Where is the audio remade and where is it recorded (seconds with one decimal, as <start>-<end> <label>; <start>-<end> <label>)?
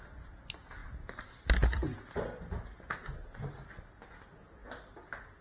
0.0-5.4 recorded